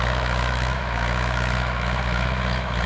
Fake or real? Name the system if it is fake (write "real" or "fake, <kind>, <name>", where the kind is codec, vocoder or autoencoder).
fake, autoencoder, DAC-VAE